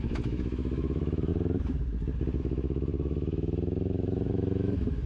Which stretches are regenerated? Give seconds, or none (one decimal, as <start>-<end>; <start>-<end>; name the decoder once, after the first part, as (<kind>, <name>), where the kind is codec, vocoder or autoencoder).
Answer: 0.0-1.3 (autoencoder, DAC-VAE); 2.4-5.1